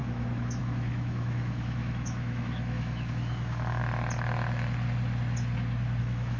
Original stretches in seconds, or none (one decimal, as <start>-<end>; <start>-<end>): 3.8-6.0